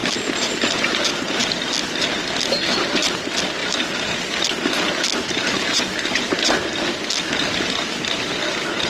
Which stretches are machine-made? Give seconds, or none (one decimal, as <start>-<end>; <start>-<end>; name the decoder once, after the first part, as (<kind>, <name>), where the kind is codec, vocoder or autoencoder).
none